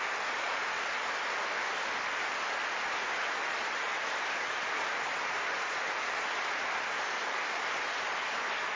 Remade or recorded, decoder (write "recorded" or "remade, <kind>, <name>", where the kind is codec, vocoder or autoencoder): remade, vocoder, BigVGAN v2